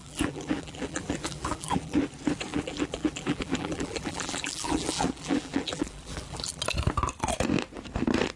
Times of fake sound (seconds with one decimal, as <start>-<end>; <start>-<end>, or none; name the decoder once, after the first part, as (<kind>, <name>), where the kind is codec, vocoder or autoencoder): 0.0-2.0 (vocoder, BigVGAN v2); 2.5-6.6